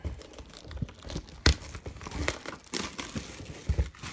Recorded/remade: recorded